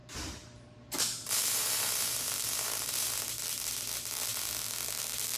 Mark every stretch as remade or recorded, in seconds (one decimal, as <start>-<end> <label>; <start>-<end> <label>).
0.0-3.2 remade; 3.2-5.4 recorded